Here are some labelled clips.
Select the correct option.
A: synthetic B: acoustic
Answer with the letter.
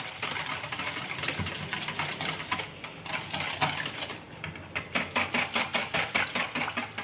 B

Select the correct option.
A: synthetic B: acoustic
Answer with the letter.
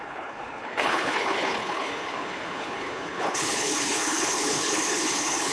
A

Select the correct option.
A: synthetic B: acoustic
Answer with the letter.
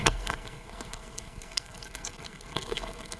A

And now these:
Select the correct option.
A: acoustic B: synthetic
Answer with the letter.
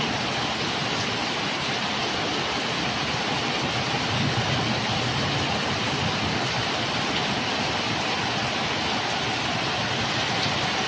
A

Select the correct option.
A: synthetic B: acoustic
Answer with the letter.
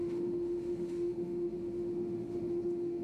A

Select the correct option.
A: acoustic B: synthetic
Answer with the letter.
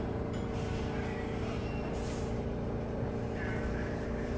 B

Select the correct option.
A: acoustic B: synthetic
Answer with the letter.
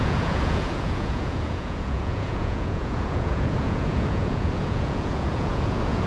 B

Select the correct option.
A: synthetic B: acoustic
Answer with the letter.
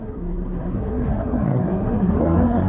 A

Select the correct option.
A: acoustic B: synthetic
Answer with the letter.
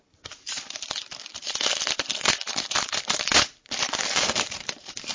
B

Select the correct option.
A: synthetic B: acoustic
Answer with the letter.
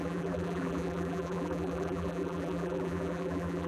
A